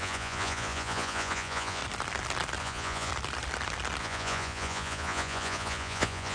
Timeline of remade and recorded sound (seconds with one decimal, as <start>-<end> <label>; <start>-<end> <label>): 0.0-1.8 remade; 1.8-2.6 recorded; 2.6-3.1 remade; 3.1-4.0 recorded; 4.0-6.3 remade